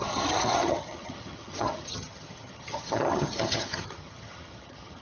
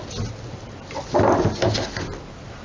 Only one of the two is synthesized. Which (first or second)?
first